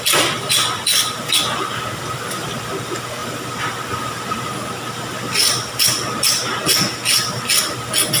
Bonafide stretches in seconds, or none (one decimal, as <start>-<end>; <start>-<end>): 0.0-8.2